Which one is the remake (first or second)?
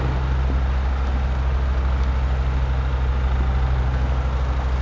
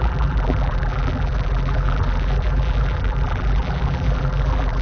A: second